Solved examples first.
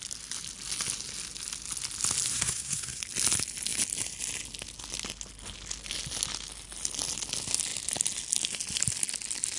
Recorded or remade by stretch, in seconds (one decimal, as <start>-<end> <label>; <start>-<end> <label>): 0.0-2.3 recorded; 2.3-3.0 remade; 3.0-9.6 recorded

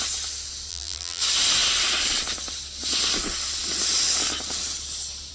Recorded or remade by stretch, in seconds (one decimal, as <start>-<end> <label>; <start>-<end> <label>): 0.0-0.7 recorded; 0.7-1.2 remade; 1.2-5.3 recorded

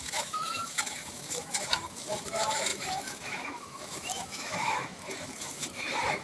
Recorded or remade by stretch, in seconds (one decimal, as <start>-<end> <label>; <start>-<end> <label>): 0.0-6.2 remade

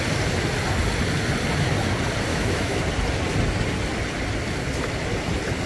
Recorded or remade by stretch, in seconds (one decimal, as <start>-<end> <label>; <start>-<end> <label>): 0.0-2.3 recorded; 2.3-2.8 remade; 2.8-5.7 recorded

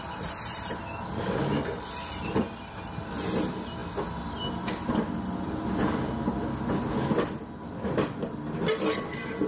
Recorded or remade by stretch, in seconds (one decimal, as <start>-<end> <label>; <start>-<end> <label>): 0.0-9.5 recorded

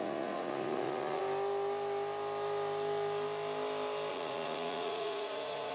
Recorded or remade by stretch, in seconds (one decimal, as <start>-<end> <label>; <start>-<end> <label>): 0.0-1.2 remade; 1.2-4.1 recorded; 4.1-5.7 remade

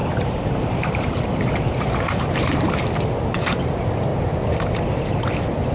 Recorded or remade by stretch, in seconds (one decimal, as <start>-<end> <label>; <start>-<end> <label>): 0.0-2.9 remade; 2.9-5.7 recorded